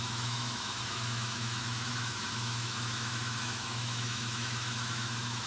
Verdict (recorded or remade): remade